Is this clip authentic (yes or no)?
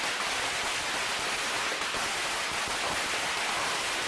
yes